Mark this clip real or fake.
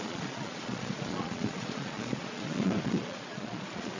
fake